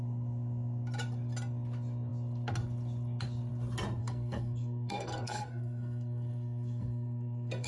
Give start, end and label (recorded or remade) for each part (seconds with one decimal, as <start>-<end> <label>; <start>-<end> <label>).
0.0-4.0 recorded; 4.0-7.7 remade